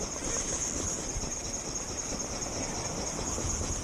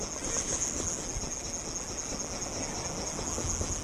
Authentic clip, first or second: second